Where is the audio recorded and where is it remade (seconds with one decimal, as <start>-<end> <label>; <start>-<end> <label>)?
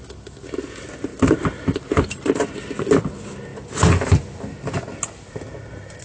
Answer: 0.0-6.0 recorded